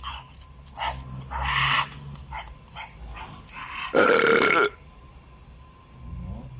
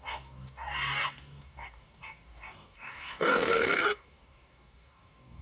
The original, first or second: first